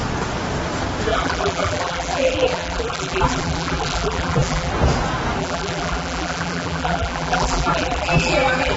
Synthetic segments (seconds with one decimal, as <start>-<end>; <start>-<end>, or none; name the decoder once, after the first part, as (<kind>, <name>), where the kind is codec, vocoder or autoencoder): 1.1-4.7 (vocoder, BigVGAN v2); 5.4-8.8